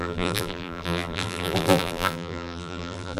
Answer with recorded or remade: remade